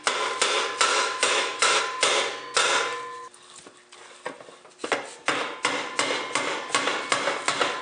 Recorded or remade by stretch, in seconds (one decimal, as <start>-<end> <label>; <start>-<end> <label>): 0.0-0.9 recorded; 0.9-1.8 remade; 1.8-7.8 recorded